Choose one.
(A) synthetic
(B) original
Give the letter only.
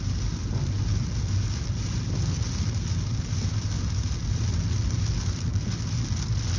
B